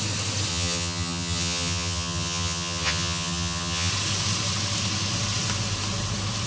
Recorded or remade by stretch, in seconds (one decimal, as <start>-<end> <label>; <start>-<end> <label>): 0.0-0.5 recorded; 0.5-3.9 remade; 3.9-6.5 recorded